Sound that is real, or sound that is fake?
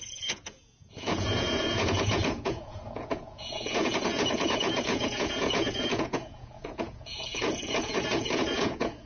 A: fake